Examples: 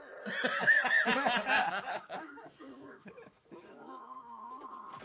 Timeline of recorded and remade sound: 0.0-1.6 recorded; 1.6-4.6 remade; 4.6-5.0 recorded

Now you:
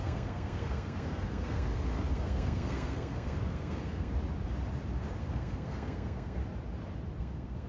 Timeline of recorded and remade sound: 0.0-4.1 remade; 4.1-5.2 recorded; 5.2-6.4 remade; 6.4-7.2 recorded; 7.2-7.7 remade